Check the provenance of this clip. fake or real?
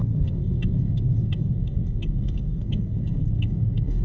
fake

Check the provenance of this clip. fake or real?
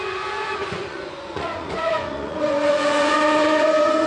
fake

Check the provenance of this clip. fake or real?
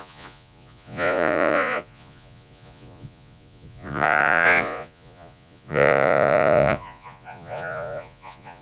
fake